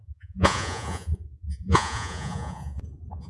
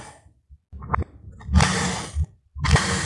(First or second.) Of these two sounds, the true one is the second